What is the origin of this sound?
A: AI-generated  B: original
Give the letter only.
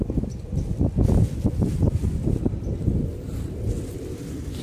B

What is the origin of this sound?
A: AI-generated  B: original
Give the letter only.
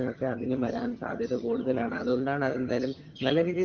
A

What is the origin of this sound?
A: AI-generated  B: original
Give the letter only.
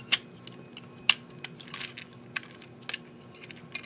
B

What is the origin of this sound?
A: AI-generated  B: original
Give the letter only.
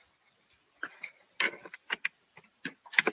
A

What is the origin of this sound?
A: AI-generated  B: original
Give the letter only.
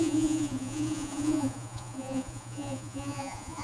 A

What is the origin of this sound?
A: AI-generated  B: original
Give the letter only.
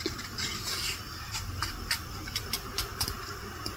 B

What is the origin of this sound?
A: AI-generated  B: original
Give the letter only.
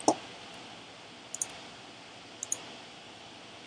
B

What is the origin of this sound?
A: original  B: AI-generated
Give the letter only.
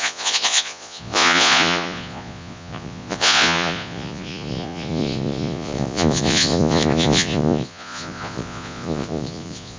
B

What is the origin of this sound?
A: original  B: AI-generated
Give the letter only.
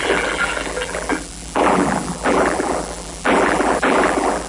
B